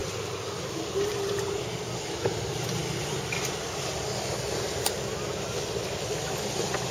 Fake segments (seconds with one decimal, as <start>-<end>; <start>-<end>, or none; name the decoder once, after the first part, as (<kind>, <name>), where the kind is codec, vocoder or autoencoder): none